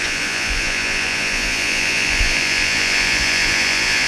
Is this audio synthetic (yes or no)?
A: yes